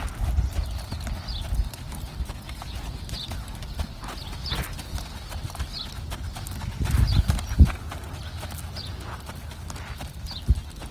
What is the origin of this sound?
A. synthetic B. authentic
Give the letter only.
B